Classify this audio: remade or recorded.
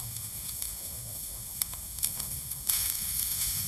remade